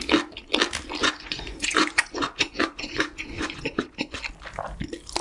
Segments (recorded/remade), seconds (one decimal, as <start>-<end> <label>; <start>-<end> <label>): 0.0-1.0 recorded; 1.0-4.1 remade; 4.1-5.2 recorded